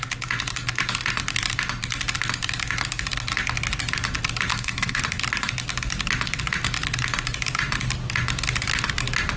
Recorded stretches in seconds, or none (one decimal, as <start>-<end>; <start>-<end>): 0.0-4.5; 5.0-9.4